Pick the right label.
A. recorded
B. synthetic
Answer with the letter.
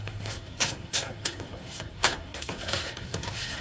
B